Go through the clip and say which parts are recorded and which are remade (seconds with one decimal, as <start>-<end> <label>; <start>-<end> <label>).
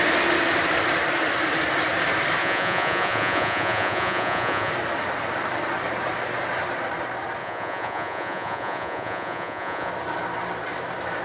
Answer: 0.0-2.4 recorded; 2.4-4.7 remade; 4.7-7.4 recorded; 7.4-9.9 remade; 9.9-11.2 recorded